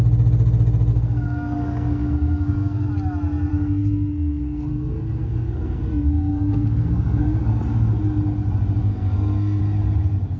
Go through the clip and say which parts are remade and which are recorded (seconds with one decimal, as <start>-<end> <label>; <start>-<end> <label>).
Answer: 0.0-0.9 recorded; 0.9-2.9 remade; 2.9-3.5 recorded; 3.5-7.6 remade; 7.6-8.8 recorded; 8.8-9.6 remade; 9.6-10.4 recorded